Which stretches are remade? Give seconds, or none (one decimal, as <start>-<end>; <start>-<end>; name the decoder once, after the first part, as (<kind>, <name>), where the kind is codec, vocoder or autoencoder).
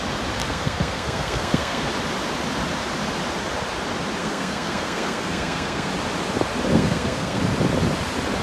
0.4-1.9 (codec, SNAC); 4.2-5.9; 6.7-7.4